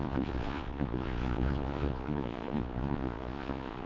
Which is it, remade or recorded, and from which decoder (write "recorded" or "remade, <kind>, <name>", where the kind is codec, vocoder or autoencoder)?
remade, vocoder, Vocos